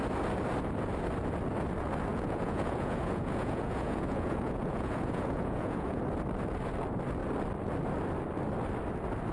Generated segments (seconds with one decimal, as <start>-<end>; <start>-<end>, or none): 2.1-6.0